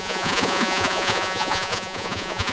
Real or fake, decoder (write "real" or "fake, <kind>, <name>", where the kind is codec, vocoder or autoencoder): fake, vocoder, Vocos